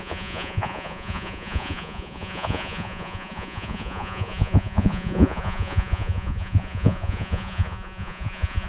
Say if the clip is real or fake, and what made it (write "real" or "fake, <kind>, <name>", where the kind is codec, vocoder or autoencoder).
fake, vocoder, Vocos